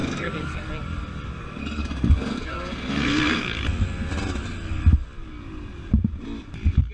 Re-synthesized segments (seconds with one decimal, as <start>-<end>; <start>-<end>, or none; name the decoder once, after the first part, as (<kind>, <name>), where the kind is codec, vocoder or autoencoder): 0.0-0.7 (codec, SNAC); 1.4-3.6